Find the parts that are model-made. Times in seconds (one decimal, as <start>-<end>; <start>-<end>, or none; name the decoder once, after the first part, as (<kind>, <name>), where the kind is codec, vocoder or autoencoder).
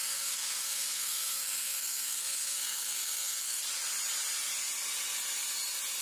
0.0-3.6 (codec, SNAC)